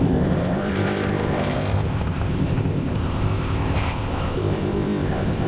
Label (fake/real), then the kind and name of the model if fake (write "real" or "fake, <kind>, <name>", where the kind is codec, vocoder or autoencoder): fake, codec, ZipCodec